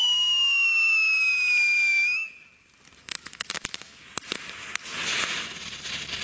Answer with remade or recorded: recorded